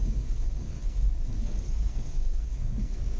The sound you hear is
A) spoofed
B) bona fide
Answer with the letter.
A